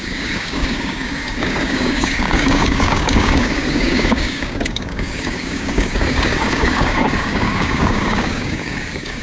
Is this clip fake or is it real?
fake